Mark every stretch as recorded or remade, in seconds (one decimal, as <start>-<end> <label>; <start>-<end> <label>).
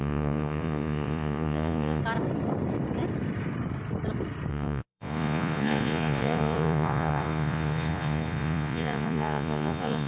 0.0-2.0 remade; 2.0-4.5 recorded; 4.5-10.1 remade